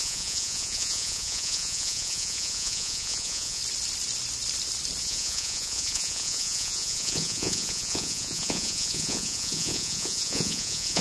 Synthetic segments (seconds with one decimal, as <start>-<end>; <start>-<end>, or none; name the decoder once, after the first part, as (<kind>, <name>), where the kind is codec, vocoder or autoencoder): 0.0-3.6 (vocoder, Vocos); 5.0-11.0